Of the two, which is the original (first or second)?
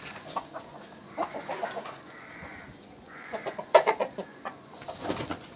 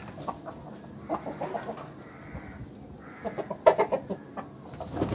second